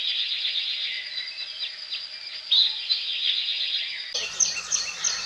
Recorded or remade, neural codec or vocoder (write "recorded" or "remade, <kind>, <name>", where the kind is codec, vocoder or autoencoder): recorded